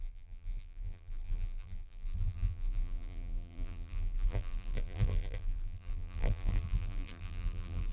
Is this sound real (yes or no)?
no